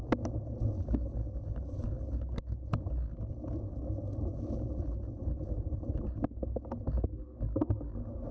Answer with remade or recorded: recorded